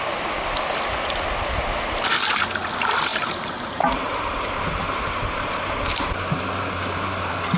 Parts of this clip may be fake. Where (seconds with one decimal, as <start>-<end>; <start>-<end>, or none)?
3.1-7.6